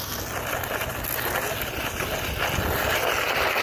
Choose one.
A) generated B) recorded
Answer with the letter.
B